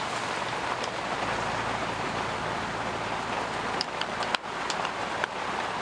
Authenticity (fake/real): real